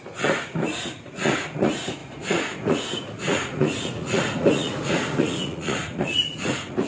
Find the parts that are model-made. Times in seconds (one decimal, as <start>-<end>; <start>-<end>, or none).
0.0-6.9